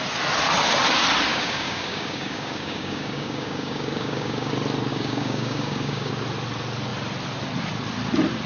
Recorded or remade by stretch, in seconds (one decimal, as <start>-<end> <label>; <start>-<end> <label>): 0.0-1.3 recorded; 1.3-4.5 remade; 4.5-4.9 recorded; 4.9-6.1 remade; 6.1-8.5 recorded